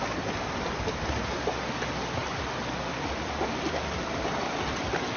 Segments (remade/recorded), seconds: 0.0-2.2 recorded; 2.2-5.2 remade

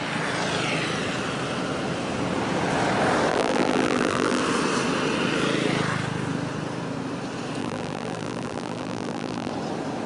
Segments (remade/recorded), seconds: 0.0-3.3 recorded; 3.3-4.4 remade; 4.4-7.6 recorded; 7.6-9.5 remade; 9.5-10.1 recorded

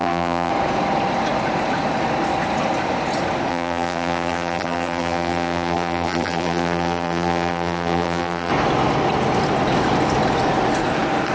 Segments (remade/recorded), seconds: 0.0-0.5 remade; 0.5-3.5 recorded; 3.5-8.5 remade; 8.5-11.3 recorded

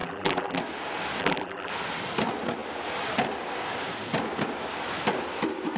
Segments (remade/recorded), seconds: 0.0-0.6 remade; 0.6-1.2 recorded; 1.2-1.7 remade; 1.7-5.8 recorded

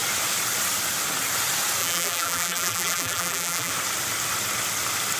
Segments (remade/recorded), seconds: 0.0-1.8 recorded; 1.8-3.7 remade; 3.7-5.2 recorded

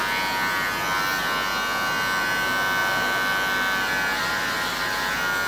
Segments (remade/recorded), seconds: 0.0-5.5 recorded

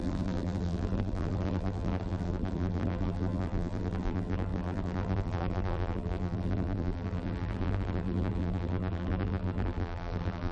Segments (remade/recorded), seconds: 0.0-10.5 remade